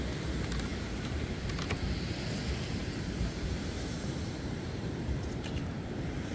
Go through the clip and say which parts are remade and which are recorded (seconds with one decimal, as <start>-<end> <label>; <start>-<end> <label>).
0.0-0.7 recorded; 0.7-1.4 remade; 1.4-2.8 recorded; 2.8-6.3 remade